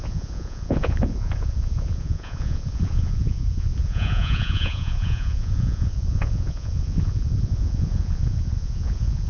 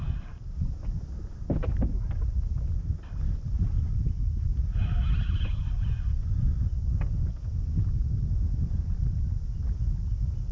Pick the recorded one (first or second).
second